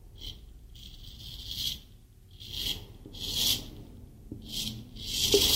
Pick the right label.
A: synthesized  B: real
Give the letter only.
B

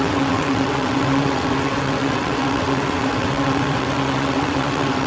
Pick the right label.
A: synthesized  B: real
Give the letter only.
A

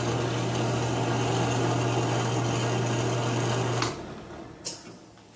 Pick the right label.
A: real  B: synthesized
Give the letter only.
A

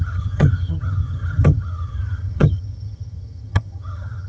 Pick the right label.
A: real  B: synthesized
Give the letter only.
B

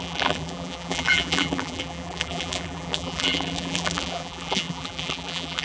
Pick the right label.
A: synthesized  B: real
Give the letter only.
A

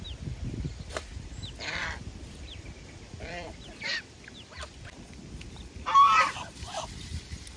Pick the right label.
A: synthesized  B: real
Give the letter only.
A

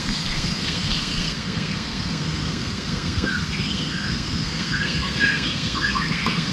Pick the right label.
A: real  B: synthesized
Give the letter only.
B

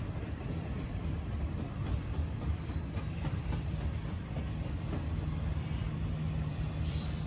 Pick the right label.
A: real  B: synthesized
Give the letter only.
B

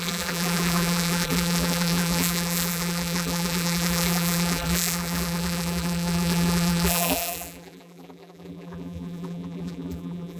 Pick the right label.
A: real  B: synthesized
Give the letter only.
B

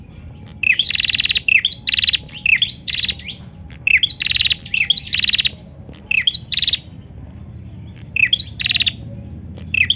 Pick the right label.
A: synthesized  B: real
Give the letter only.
B